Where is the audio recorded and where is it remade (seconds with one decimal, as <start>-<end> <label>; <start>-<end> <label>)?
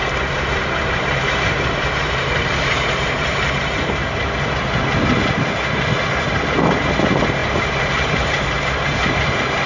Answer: 0.0-4.0 remade; 4.0-7.0 recorded; 7.0-9.7 remade